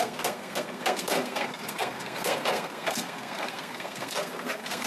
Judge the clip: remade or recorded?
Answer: remade